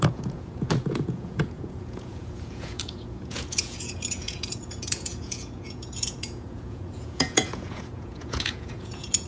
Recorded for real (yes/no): no